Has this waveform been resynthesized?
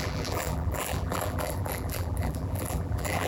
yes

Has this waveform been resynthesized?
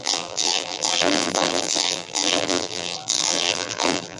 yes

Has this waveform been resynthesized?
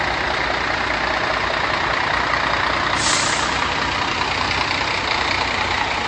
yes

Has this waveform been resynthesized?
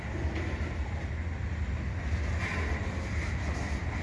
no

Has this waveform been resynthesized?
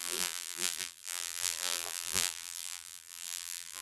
yes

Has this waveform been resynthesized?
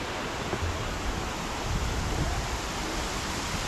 no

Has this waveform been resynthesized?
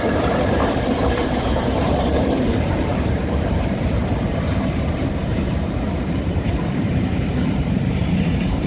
yes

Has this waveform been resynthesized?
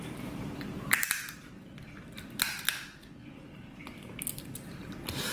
no